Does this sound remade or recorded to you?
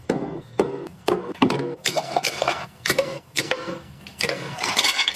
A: remade